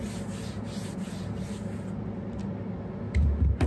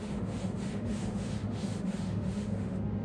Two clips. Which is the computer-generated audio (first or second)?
second